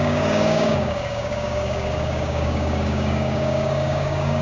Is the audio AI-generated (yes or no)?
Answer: yes